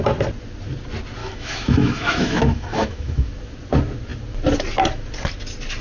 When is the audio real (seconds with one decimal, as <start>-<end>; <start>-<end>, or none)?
0.0-1.2; 3.3-5.8